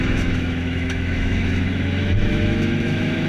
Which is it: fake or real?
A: fake